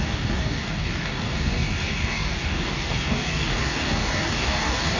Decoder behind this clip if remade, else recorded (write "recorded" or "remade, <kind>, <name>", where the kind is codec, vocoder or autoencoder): remade, codec, DAC